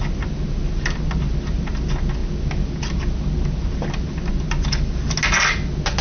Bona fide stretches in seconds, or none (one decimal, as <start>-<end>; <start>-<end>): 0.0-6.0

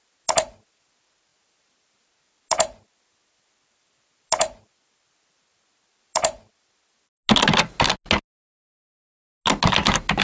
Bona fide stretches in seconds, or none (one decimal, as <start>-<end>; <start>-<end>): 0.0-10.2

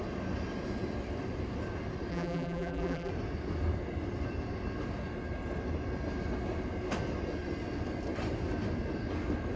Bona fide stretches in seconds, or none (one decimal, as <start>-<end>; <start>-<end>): 0.0-2.1; 3.1-9.6